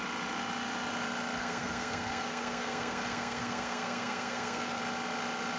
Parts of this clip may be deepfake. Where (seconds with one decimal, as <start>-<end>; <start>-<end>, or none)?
1.4-4.8